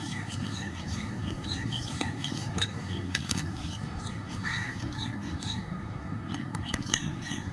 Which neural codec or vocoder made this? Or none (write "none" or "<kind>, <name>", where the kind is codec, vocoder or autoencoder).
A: codec, SNAC